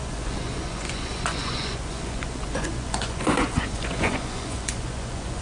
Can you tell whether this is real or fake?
fake